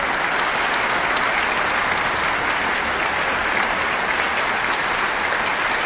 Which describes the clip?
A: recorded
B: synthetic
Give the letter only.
A